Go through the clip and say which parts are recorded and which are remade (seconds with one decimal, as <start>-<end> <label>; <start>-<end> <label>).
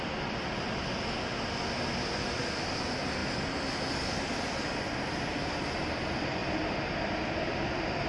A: 0.0-8.1 recorded